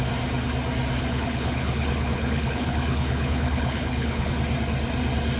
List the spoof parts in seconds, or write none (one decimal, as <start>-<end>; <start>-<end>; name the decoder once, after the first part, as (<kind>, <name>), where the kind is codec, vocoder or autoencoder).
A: 1.1-4.3 (codec, HILCodec)